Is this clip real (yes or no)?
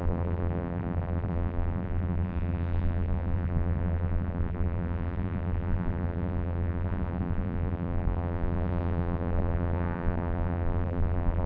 no